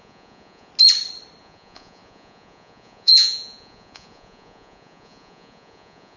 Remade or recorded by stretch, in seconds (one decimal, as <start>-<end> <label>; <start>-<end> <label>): 0.0-0.7 remade; 0.7-1.4 recorded; 1.4-6.2 remade